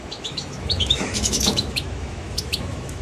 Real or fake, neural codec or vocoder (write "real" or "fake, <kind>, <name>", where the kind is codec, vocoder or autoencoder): fake, autoencoder, DAC-VAE